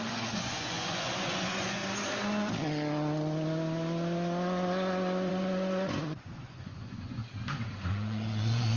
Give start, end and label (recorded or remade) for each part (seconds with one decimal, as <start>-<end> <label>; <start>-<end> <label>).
0.0-1.8 remade; 1.8-5.3 recorded; 5.3-7.2 remade; 7.2-7.9 recorded; 7.9-8.8 remade